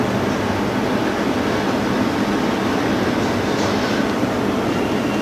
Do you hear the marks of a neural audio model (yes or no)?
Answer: no